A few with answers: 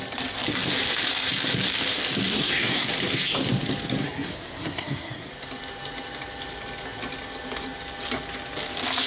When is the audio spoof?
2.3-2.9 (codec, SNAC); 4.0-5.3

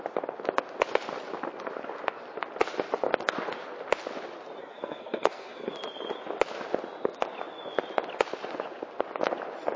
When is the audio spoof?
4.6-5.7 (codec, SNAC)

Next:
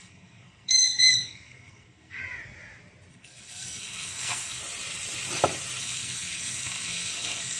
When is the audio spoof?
0.0-2.2 (codec, SNAC); 3.1-4.6; 5.8-7.6

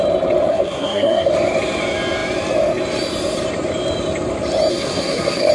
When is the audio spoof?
0.5-1.3 (codec, SNAC); 4.7-5.5

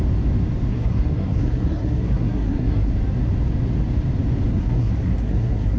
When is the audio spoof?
0.7-2.9 (codec, SNAC); 4.5-5.8